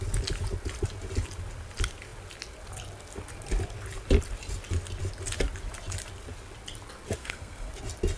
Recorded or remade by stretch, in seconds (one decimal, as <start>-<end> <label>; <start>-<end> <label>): 0.0-7.2 recorded; 7.2-7.7 remade; 7.7-8.2 recorded